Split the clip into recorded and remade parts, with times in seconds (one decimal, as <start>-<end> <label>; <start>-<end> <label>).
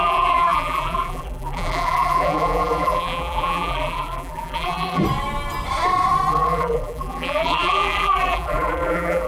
0.0-5.0 remade; 5.0-6.3 recorded; 6.3-9.3 remade